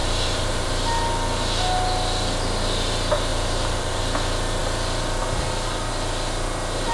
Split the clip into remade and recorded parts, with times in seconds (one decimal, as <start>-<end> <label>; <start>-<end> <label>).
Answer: 0.0-0.7 remade; 0.7-3.3 recorded; 3.3-4.0 remade; 4.0-6.9 recorded